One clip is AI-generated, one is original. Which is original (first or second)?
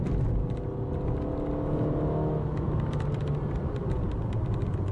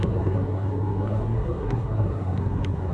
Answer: first